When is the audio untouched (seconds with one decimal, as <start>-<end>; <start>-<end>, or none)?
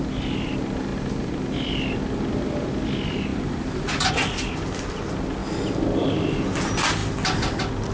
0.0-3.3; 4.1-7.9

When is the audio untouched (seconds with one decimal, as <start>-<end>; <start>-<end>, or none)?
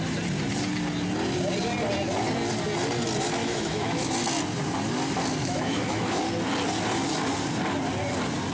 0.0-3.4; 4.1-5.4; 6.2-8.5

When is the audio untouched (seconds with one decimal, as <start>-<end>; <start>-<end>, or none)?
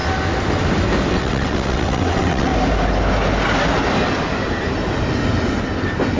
0.0-1.1; 2.5-6.2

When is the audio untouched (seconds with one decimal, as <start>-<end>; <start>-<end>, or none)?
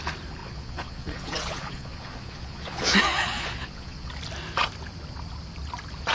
0.0-0.4; 4.1-6.1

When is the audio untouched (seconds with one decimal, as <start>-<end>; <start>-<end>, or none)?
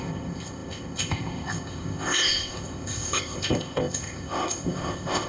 none